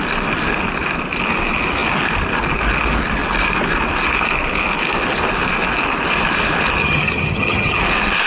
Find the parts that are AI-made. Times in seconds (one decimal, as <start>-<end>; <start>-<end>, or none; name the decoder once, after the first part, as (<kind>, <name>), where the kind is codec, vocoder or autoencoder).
6.8-7.8 (vocoder, HiFi-GAN)